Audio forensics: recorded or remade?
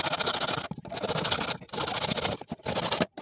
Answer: recorded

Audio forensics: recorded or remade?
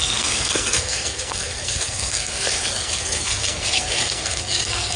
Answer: remade